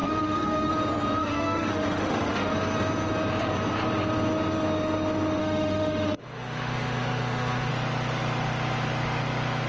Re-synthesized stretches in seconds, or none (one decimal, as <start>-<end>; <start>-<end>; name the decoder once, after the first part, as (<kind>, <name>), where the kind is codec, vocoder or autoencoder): 0.0-0.7 (autoencoder, DAC-VAE); 1.2-2.5; 5.4-7.7